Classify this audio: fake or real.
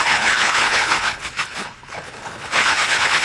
fake